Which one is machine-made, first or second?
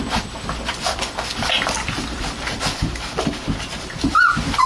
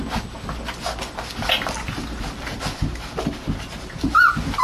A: first